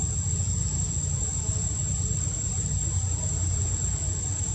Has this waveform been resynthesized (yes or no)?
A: yes